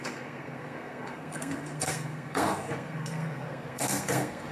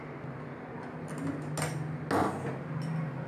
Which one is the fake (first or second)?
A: first